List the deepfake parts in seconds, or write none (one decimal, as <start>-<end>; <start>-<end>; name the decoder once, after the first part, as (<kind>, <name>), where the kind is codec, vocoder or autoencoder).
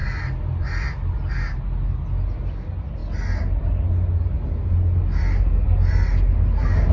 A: none